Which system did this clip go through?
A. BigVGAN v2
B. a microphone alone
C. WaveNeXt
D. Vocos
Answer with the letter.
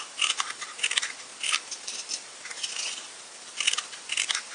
B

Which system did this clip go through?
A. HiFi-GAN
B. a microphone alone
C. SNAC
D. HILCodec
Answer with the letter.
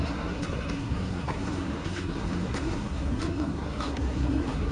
C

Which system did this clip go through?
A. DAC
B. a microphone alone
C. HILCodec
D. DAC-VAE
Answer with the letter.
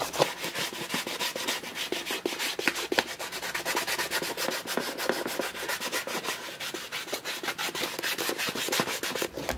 B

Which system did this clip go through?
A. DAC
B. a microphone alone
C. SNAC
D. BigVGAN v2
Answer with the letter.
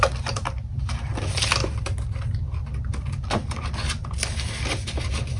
B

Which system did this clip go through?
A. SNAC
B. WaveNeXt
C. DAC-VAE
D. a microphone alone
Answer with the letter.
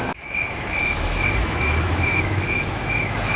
C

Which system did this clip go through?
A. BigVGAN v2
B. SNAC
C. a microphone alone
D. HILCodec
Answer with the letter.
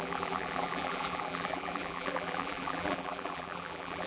A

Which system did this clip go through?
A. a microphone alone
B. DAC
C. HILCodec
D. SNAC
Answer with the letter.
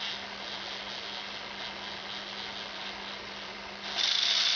A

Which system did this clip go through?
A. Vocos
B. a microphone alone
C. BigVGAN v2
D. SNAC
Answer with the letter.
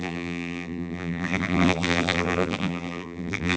C